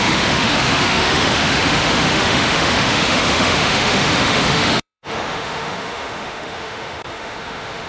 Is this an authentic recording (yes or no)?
no